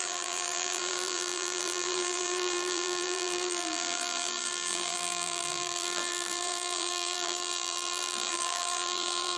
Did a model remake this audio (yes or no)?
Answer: yes